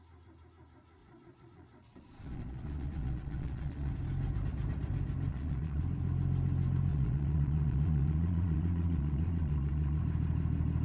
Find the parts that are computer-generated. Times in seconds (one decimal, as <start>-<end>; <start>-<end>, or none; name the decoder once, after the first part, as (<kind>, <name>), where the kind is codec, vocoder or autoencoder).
1.0-3.9 (vocoder, Vocos); 5.3-5.8; 6.9-10.0